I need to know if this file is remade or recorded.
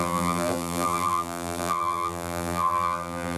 remade